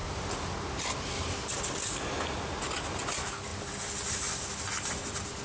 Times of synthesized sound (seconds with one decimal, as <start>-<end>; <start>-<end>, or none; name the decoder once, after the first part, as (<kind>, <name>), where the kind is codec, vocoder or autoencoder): none